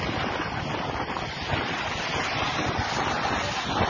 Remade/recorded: recorded